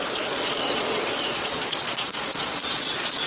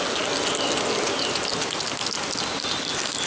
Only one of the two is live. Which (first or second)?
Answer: second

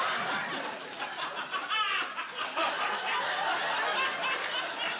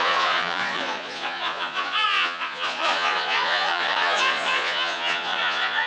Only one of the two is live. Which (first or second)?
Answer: first